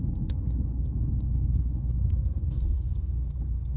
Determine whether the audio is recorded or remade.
remade